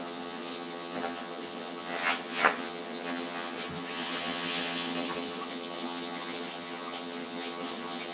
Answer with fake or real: fake